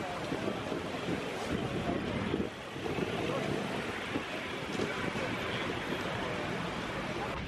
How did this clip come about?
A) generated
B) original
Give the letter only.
B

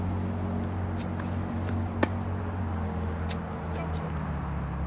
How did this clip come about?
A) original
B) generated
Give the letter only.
A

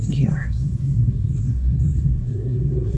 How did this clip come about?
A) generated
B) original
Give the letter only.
A